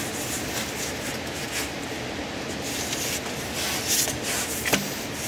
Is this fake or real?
real